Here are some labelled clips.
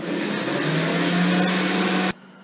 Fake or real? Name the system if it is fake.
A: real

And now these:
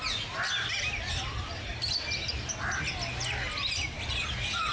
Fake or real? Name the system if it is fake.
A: real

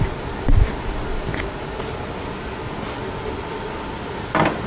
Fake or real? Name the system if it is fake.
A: real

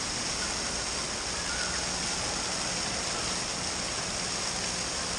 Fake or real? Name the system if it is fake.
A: real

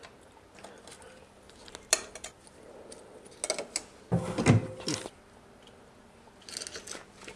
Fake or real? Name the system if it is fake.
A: real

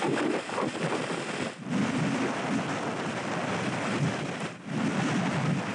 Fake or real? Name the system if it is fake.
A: real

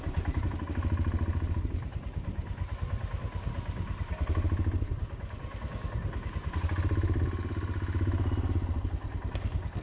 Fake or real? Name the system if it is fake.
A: real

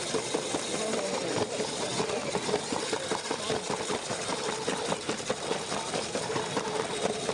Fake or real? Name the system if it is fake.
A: fake, vocoder, BigVGAN v2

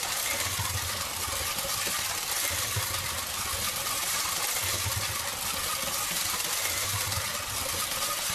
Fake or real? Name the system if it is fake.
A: real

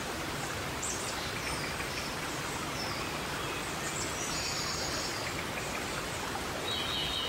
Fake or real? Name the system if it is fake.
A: real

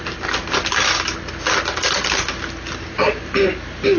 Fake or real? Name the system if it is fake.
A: real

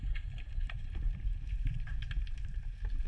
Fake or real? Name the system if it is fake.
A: fake, vocoder, BigVGAN v2